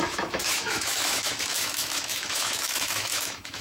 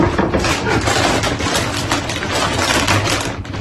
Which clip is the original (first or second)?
second